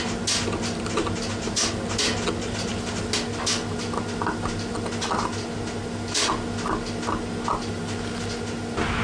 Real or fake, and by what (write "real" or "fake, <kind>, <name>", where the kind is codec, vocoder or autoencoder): real